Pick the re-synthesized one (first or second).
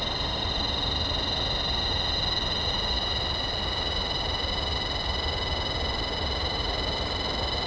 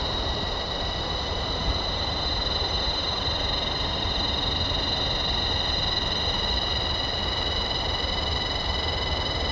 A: second